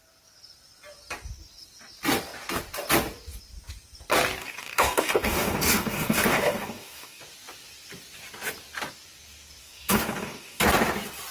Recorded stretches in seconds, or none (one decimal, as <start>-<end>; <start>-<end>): 0.0-4.4; 7.2-9.6; 10.6-11.3